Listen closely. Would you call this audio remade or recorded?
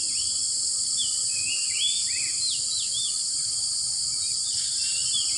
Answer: recorded